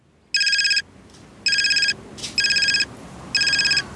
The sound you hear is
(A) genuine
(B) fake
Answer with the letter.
A